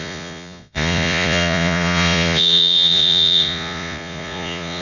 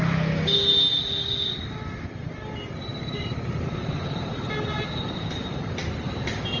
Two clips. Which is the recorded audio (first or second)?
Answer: second